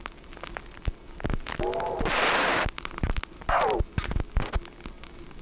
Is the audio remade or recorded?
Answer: recorded